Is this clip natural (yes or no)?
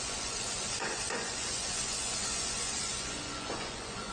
no